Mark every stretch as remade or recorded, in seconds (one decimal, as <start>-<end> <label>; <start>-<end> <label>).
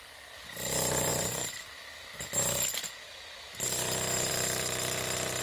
0.0-5.4 recorded